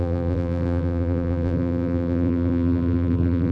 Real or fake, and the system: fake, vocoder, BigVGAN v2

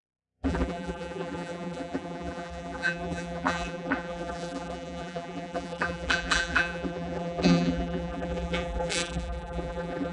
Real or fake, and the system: fake, vocoder, BigVGAN v2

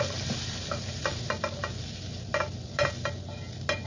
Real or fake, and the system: real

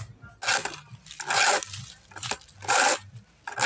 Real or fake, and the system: real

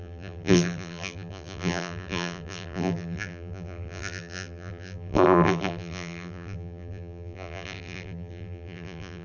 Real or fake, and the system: fake, vocoder, BigVGAN v2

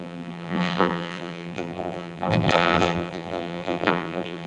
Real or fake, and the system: fake, vocoder, BigVGAN v2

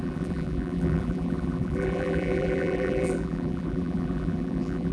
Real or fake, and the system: fake, vocoder, BigVGAN v2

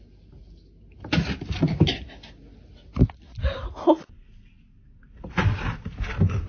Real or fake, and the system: real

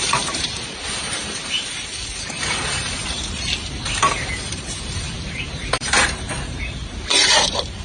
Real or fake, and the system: fake, vocoder, BigVGAN v2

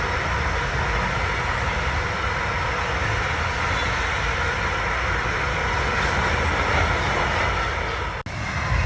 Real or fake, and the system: real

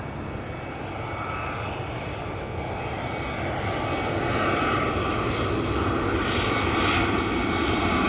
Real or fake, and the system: real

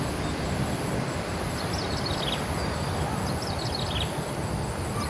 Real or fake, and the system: real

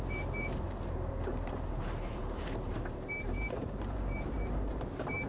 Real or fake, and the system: fake, vocoder, BigVGAN v2